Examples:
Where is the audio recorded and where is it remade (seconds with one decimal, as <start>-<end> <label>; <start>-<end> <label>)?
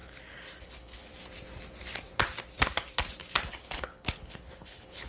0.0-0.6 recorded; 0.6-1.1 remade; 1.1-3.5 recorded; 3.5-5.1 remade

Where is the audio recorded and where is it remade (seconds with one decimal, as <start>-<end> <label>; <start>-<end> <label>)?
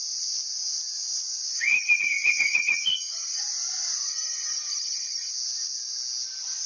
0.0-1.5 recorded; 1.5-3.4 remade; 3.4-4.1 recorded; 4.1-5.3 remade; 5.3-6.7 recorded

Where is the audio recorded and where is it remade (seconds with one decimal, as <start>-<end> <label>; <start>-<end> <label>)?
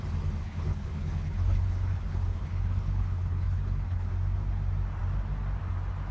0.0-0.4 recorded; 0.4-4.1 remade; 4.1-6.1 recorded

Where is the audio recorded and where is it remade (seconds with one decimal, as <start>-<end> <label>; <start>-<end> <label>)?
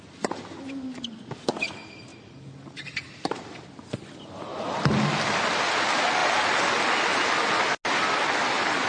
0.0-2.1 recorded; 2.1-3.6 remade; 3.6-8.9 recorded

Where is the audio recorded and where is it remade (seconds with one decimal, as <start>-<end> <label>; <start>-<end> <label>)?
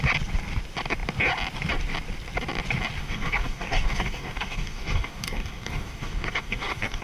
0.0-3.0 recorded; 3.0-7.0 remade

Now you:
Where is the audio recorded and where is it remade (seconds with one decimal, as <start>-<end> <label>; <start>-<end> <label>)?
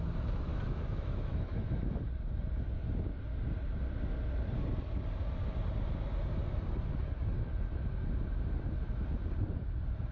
0.0-0.5 recorded; 0.5-2.0 remade; 2.0-10.1 recorded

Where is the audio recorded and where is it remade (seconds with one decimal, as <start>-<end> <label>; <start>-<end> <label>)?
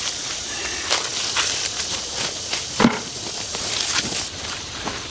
0.0-5.1 recorded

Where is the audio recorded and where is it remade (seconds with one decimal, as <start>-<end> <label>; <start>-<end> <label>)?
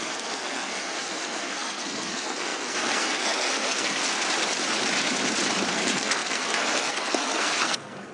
0.0-4.0 remade; 4.0-5.7 recorded; 5.7-8.1 remade